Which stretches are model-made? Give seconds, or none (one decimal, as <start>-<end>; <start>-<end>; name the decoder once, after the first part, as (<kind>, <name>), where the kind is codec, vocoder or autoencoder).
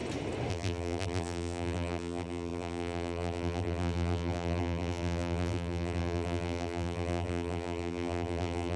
0.5-8.8 (vocoder, BigVGAN v2)